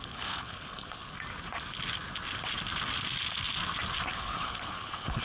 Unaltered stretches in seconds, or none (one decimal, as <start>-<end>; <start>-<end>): 1.0-4.1